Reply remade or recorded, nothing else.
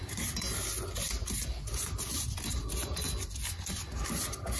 recorded